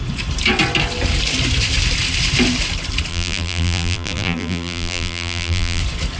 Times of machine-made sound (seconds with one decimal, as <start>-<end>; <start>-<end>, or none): 3.1-5.8